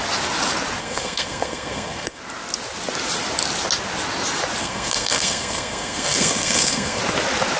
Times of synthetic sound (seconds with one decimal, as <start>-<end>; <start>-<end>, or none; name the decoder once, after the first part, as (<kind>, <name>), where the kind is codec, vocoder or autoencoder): 0.8-2.2 (codec, SNAC); 4.6-7.0